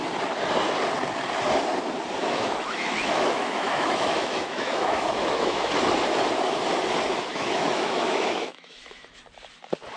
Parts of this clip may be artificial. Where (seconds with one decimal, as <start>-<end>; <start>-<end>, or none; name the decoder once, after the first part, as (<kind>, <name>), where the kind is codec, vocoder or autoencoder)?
2.2-5.7 (autoencoder, DAC-VAE); 7.3-9.2